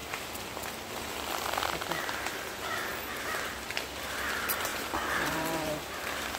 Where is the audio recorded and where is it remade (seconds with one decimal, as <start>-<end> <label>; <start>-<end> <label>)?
0.0-4.7 recorded; 4.7-6.4 remade